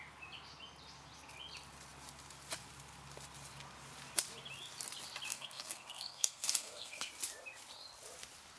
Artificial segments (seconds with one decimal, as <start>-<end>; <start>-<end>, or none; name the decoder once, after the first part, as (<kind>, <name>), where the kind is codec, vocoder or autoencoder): 5.3-7.1 (codec, SNAC)